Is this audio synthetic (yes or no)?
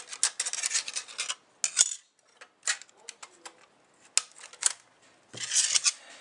no